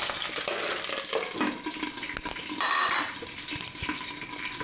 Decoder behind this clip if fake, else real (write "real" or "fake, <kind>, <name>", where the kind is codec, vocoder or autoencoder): real